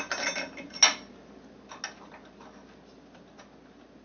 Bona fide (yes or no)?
yes